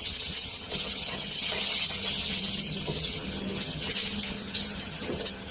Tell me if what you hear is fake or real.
fake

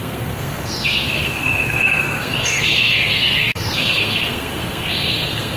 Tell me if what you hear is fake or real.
fake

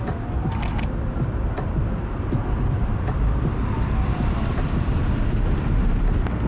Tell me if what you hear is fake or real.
fake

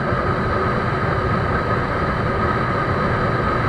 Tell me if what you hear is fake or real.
real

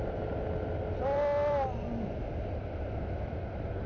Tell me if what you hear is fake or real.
real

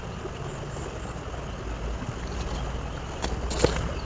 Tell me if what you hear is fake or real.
real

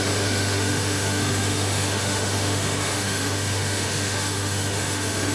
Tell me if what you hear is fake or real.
fake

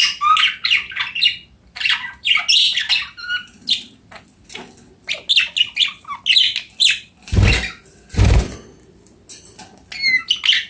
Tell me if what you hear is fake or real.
real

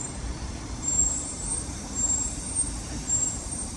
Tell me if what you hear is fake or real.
fake